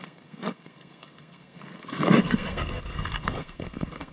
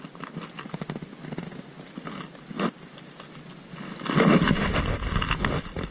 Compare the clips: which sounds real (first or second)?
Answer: second